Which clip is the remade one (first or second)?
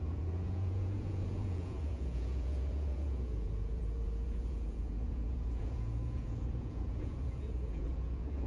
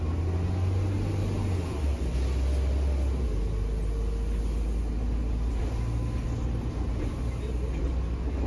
first